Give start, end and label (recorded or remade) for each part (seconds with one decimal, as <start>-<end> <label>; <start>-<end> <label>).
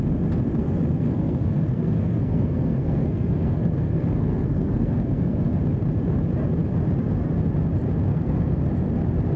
0.0-0.6 recorded; 0.6-5.6 remade; 5.6-8.1 recorded; 8.1-8.6 remade; 8.6-9.4 recorded